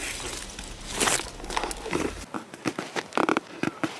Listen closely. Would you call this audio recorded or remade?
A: recorded